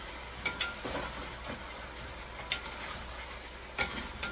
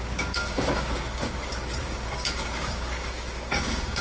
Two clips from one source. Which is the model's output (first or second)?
second